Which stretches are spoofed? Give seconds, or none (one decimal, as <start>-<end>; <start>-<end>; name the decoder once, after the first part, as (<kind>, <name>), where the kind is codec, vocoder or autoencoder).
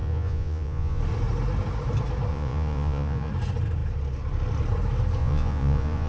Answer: 0.0-1.0 (vocoder, Vocos); 2.3-3.3; 5.2-6.1